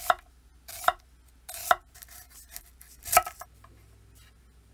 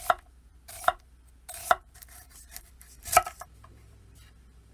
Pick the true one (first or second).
first